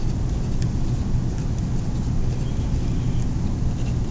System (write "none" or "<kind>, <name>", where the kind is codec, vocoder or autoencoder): none